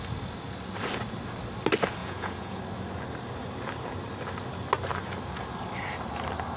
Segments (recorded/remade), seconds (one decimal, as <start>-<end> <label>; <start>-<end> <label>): 0.0-2.0 recorded; 2.0-2.6 remade; 2.6-6.6 recorded

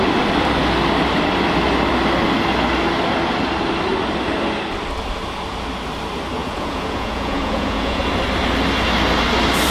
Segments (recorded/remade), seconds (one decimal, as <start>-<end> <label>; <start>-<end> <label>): 0.0-6.4 recorded; 6.4-8.0 remade; 8.0-9.7 recorded

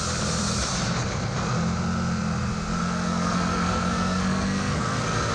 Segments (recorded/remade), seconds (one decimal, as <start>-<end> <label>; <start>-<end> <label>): 0.0-2.8 recorded; 2.8-5.3 remade

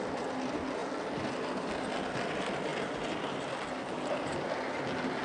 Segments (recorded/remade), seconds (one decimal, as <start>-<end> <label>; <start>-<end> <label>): 0.0-5.2 recorded